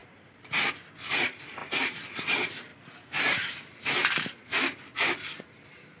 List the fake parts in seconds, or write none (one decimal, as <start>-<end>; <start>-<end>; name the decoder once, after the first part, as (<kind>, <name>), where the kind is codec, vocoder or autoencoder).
0.0-6.0 (vocoder, BigVGAN v2)